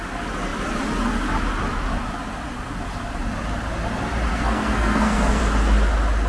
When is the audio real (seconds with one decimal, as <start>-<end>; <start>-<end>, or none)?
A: 0.0-4.3; 5.4-6.3